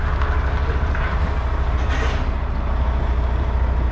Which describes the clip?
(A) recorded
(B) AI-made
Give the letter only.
A